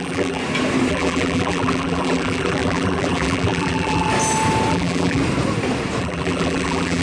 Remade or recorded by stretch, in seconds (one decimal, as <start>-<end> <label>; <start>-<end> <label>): 0.0-0.4 remade; 0.4-0.9 recorded; 0.9-4.1 remade; 4.1-4.7 recorded; 4.7-5.2 remade; 5.2-6.0 recorded; 6.0-7.0 remade